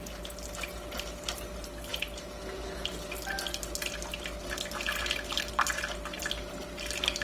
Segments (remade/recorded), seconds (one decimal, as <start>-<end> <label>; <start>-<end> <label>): 0.0-7.2 recorded